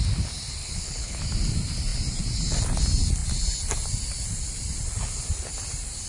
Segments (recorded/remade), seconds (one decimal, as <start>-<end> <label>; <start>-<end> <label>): 0.0-0.6 recorded; 0.6-1.2 remade; 1.2-6.1 recorded